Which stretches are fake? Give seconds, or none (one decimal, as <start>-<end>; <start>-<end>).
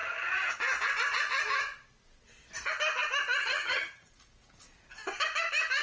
0.0-0.5; 3.4-4.1